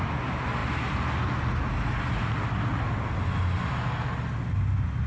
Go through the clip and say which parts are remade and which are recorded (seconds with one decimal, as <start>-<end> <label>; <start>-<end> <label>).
0.0-5.1 recorded